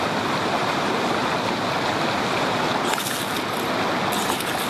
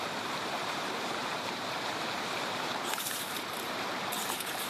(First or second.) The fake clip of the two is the second